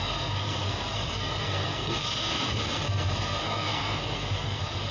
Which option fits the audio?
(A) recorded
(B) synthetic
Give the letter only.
B